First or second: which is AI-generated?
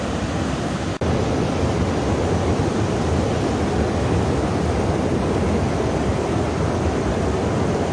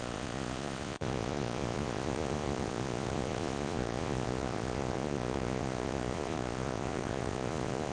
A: second